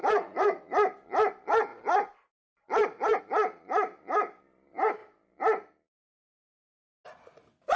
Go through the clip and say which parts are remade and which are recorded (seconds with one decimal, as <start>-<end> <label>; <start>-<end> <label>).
0.0-0.6 remade; 0.6-7.8 recorded